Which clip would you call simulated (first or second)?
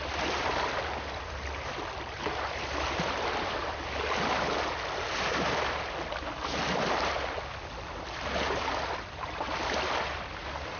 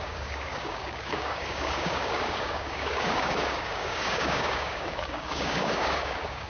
second